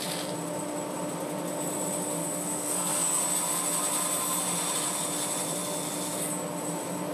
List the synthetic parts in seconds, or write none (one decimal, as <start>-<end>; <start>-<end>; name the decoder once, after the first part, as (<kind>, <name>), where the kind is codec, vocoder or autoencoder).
2.2-3.2 (codec, SNAC)

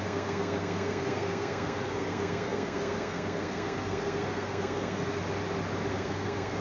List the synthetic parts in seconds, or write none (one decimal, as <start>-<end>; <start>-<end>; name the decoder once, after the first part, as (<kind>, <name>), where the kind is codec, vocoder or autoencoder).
0.0-5.2 (codec, SNAC); 5.9-6.6

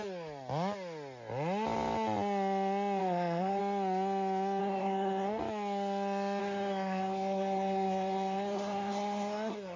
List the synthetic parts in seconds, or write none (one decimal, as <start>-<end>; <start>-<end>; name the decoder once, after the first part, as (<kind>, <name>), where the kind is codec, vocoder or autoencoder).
3.0-3.6 (codec, SNAC); 4.6-5.4; 6.4-9.8

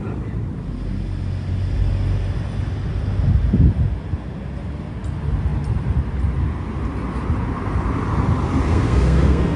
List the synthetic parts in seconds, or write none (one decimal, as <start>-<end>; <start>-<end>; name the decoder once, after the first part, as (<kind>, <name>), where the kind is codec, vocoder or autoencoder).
8.7-9.6 (codec, SNAC)

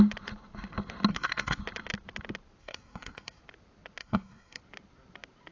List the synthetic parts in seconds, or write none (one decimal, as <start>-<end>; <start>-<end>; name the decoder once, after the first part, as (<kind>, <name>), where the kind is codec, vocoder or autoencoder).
1.1-1.6 (codec, SNAC); 2.6-3.4; 4.0-4.6